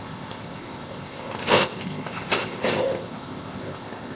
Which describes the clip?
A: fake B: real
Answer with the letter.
A